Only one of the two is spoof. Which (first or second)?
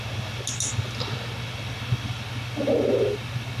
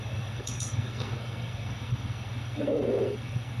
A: second